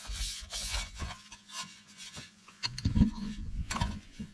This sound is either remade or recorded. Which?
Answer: remade